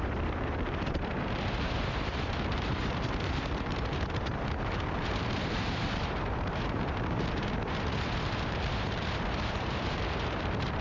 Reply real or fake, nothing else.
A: fake